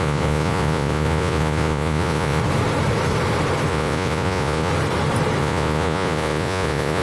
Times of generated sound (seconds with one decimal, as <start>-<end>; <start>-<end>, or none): 0.0-2.4; 3.7-4.7; 5.4-7.0